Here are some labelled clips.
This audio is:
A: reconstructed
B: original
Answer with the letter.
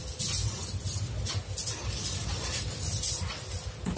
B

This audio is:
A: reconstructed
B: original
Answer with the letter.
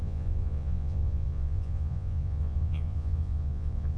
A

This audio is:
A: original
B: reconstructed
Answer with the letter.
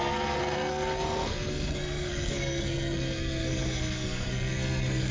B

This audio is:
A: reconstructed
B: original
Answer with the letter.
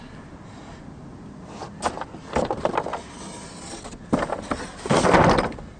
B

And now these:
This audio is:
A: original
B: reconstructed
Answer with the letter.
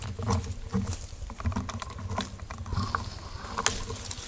A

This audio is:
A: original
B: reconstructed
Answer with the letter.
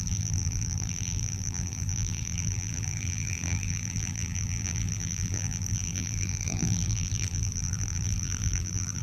B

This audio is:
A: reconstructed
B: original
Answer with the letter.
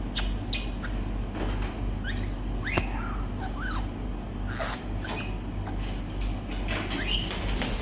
B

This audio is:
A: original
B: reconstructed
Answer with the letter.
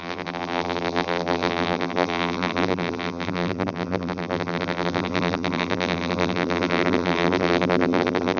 B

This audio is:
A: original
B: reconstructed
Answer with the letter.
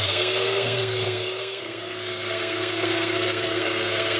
B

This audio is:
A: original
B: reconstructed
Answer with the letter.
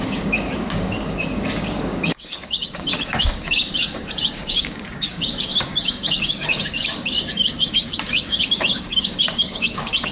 B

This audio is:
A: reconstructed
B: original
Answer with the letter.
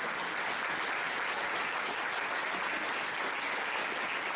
B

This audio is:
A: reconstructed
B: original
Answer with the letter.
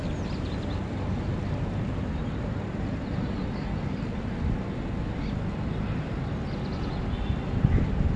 B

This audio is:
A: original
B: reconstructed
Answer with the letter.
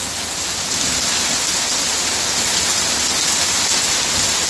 A